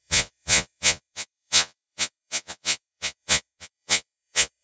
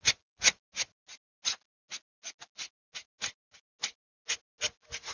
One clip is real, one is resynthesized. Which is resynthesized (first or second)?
first